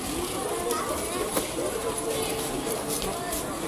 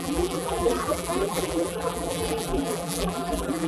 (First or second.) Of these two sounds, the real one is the first